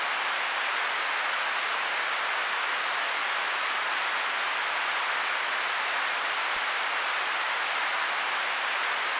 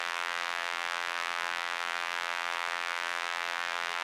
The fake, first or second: second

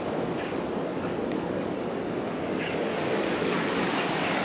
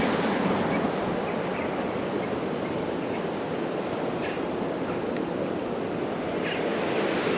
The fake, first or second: first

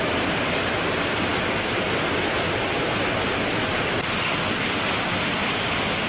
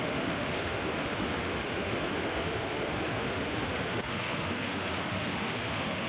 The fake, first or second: second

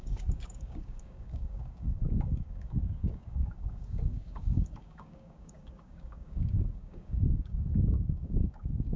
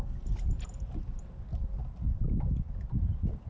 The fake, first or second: first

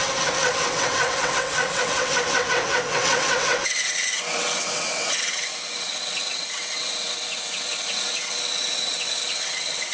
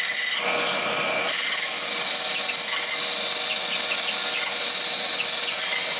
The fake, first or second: first